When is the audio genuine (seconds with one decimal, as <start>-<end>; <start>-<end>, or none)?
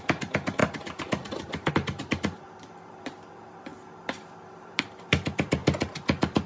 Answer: 3.7-4.5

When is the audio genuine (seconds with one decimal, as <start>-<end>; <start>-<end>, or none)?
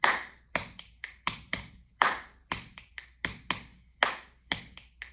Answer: 2.9-5.1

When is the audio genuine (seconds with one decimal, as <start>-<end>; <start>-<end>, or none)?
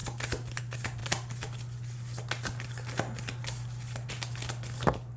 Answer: 0.0-5.2